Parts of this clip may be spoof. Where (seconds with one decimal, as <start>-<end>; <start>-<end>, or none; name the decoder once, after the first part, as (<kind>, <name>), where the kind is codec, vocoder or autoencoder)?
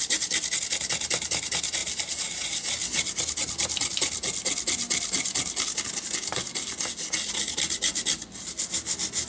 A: 1.8-2.4 (vocoder, BigVGAN v2)